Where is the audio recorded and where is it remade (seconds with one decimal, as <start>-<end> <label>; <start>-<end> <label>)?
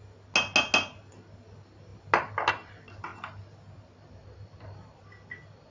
0.0-5.7 recorded